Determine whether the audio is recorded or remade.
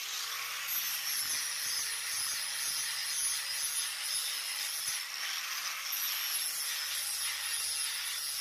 recorded